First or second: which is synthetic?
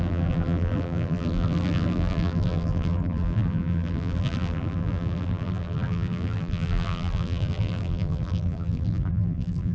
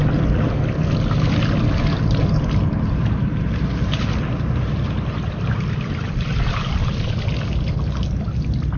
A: first